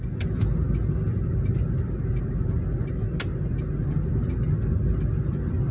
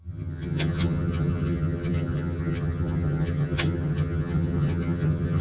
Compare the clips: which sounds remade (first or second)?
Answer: second